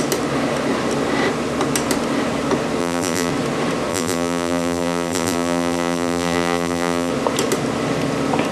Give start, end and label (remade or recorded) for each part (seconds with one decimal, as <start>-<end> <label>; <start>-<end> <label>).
0.0-2.8 recorded; 2.8-3.3 remade; 3.3-3.9 recorded; 3.9-7.1 remade; 7.1-8.5 recorded